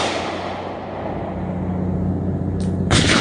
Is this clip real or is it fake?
real